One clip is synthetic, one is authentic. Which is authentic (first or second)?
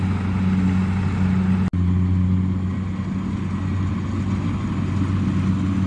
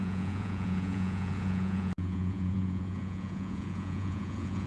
first